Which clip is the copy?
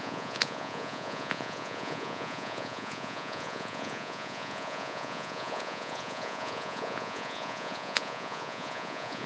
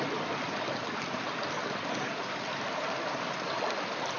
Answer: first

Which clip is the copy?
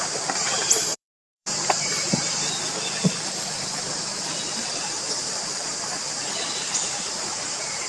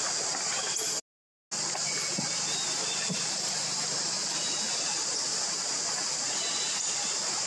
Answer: first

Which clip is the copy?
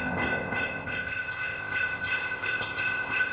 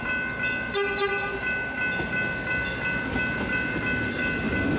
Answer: first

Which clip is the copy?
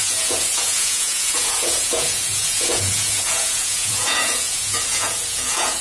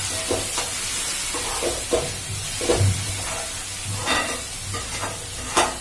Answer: first